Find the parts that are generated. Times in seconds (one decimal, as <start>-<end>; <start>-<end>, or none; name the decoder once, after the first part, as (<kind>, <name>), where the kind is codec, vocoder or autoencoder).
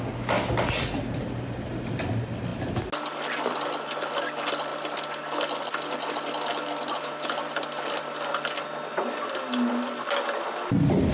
none